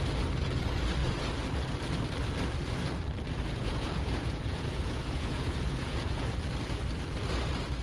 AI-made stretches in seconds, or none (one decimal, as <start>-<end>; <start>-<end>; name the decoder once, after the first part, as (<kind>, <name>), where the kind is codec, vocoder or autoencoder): 3.6-6.2 (vocoder, Vocos)